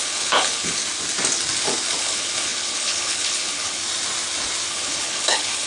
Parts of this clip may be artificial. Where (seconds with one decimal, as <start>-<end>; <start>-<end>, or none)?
0.0-0.8; 2.0-3.8; 4.7-5.7